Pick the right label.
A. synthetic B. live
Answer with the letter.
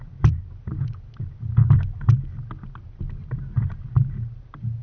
B